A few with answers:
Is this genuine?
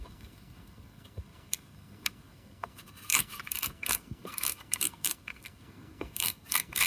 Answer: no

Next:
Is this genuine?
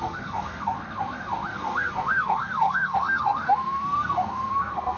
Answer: no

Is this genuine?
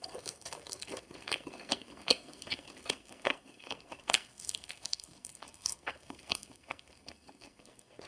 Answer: no